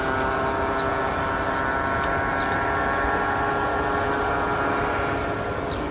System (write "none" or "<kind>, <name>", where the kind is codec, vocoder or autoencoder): none